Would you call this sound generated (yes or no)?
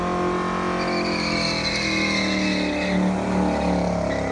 no